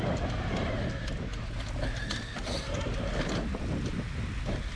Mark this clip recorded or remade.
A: recorded